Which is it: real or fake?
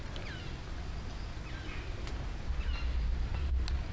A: real